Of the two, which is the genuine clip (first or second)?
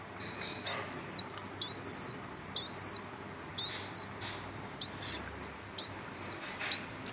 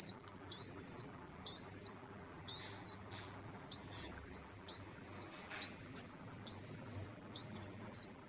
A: first